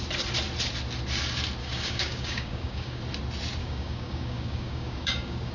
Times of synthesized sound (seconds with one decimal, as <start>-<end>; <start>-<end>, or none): 1.6-3.0; 3.6-5.5

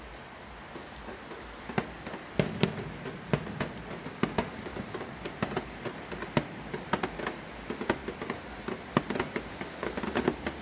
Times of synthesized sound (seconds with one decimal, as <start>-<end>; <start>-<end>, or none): none

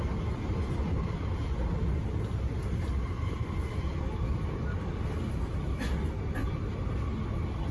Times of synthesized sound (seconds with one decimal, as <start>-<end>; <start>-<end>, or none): none

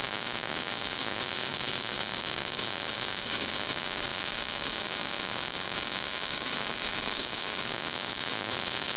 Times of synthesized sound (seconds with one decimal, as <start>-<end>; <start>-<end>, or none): 0.0-9.0

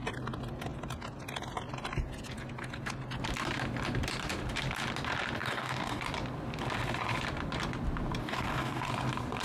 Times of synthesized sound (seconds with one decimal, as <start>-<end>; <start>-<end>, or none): 5.4-6.0; 8.2-8.9